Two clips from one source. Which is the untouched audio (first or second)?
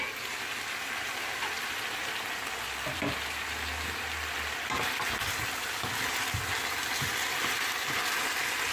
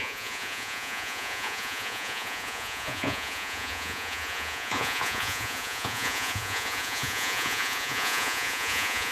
first